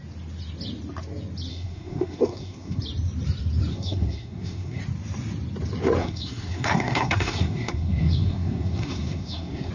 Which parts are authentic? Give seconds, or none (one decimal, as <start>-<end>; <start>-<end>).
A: 0.0-1.5; 2.8-3.7; 4.8-6.0